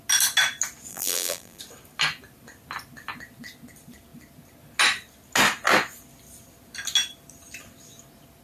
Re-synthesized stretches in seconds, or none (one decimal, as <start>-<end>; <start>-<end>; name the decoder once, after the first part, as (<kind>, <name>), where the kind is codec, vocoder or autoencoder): 0.9-1.6 (vocoder, BigVGAN v2)